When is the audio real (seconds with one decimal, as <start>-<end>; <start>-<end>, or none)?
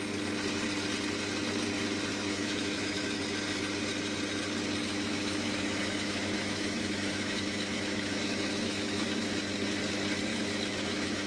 0.0-2.1; 3.2-4.8; 9.4-10.3